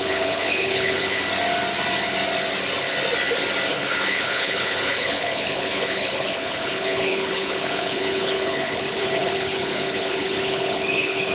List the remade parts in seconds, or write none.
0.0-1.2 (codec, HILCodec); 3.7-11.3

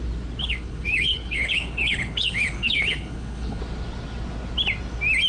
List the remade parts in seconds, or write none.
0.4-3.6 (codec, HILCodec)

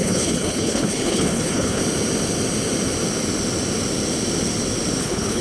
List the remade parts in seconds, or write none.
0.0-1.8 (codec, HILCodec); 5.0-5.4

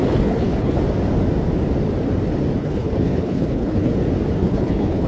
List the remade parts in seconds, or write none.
0.0-0.8 (codec, HILCodec); 2.6-3.9; 4.4-5.1